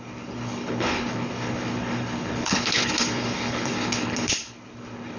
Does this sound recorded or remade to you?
remade